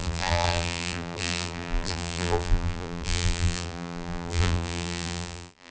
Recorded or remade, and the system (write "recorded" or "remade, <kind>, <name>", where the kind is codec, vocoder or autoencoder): remade, vocoder, BigVGAN v2